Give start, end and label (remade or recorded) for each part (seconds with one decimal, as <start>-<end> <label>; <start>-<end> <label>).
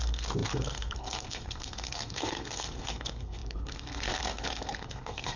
0.0-5.4 remade